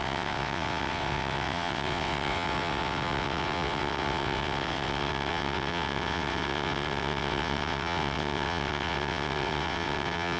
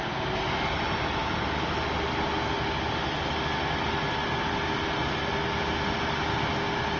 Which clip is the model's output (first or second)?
first